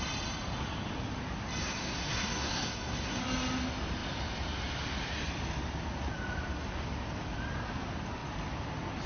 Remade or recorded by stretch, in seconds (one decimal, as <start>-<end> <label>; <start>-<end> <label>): 0.0-1.6 recorded; 1.6-3.2 remade; 3.2-9.1 recorded